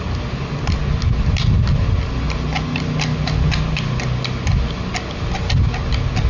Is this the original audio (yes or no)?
yes